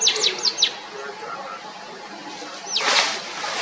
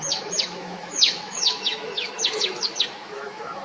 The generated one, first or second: second